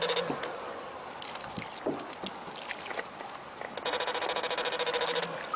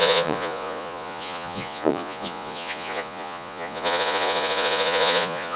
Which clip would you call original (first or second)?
first